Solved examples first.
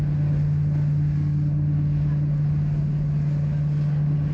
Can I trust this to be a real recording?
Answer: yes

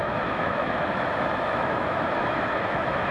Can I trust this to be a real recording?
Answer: no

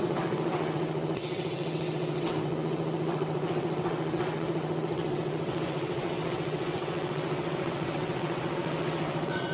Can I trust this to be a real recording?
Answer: no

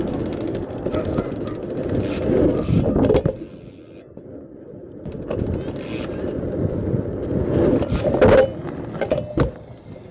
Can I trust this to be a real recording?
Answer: yes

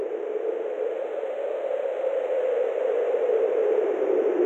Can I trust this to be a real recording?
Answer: yes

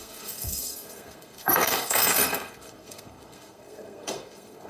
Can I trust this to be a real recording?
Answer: no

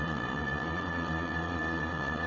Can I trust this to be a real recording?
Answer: no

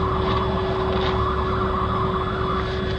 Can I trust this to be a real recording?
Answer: yes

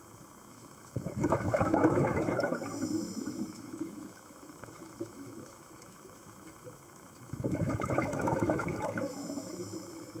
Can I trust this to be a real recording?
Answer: no